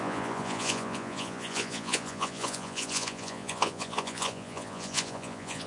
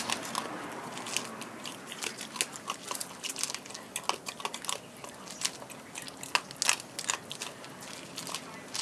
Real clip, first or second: second